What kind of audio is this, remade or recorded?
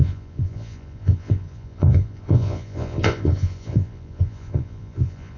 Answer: remade